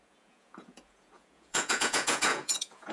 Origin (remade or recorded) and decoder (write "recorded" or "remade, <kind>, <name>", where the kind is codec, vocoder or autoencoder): remade, vocoder, Vocos